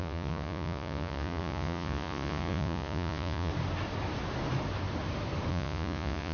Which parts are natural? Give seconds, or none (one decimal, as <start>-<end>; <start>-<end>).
3.5-5.5